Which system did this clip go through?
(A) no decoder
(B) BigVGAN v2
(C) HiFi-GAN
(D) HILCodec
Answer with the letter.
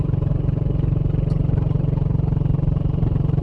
B